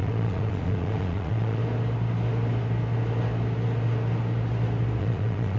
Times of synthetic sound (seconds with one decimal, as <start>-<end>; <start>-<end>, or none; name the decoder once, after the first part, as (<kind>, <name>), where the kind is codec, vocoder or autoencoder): 0.0-1.6 (vocoder, Vocos); 5.0-5.6